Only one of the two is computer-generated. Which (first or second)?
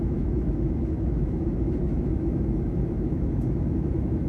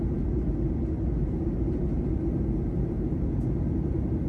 first